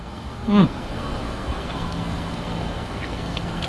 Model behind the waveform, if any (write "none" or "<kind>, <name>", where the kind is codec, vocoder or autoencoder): codec, SNAC